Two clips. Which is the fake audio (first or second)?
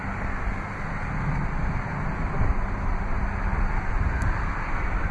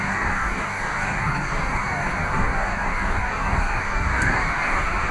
second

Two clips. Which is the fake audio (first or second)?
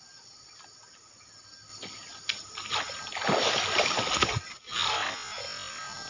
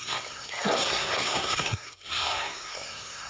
second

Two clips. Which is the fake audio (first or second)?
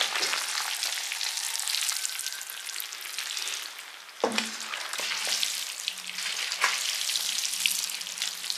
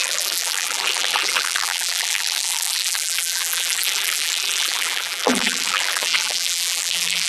second